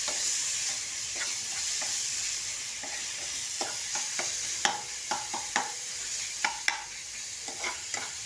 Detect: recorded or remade recorded